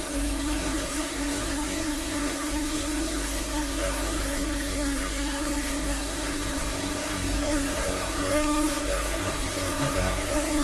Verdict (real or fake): fake